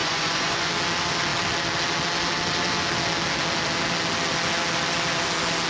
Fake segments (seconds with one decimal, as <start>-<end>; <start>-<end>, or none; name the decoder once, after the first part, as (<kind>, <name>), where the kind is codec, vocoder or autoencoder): 0.0-0.7 (vocoder, Vocos)